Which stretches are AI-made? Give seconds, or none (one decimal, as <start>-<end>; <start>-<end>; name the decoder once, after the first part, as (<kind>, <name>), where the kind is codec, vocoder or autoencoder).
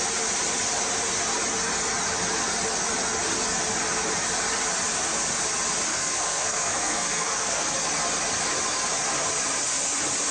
5.9-7.6 (codec, SNAC)